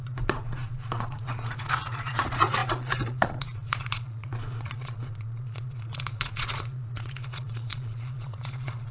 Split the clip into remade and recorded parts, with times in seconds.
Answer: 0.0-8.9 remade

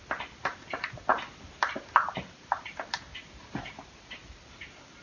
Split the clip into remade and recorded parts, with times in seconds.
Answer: 0.0-5.0 recorded

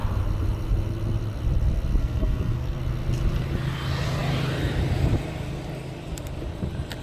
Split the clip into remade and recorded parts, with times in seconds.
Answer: 0.0-2.0 recorded; 2.0-2.8 remade; 2.8-7.0 recorded

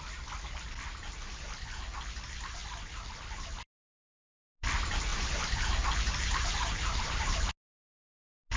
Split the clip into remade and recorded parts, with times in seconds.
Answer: 0.0-5.1 recorded; 5.1-7.5 remade; 7.5-8.6 recorded

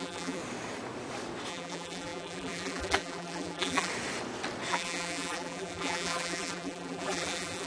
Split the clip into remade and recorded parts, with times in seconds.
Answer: 0.0-0.4 remade; 0.4-1.5 recorded; 1.5-3.9 remade; 3.9-4.7 recorded; 4.7-7.7 remade